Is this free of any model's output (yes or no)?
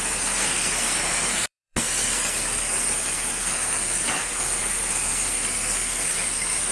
no